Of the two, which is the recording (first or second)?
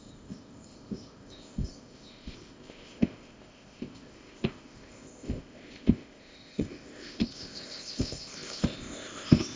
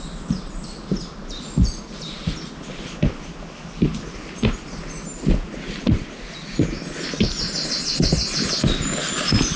second